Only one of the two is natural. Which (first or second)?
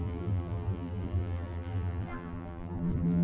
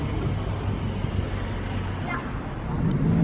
second